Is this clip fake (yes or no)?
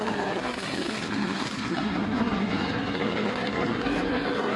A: yes